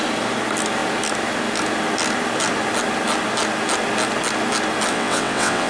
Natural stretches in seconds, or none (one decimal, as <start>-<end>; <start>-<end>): 0.0-4.9